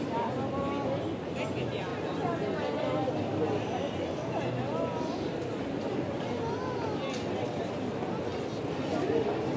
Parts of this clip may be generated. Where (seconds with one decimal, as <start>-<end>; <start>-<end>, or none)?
none